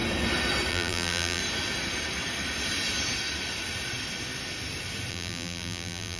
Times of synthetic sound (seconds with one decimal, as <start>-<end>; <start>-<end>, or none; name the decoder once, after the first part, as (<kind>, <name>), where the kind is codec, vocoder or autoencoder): 0.7-1.4 (vocoder, BigVGAN v2); 5.1-6.2